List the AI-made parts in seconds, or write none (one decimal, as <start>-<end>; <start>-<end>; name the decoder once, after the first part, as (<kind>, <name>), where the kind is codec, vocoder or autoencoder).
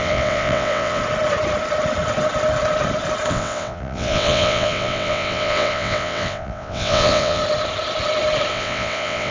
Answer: 0.0-1.0 (vocoder, WaveNeXt); 3.3-7.4; 8.5-9.3